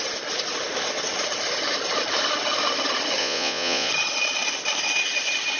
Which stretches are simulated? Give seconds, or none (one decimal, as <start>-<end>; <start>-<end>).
3.2-3.9